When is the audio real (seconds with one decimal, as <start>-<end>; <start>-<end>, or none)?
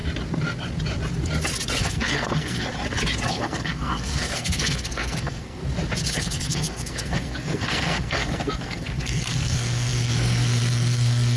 0.0-1.8; 2.7-3.3; 5.6-6.1